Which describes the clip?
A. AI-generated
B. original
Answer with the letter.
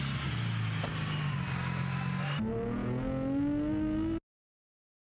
B